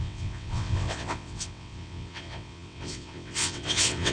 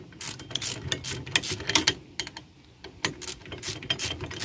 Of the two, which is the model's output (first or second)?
first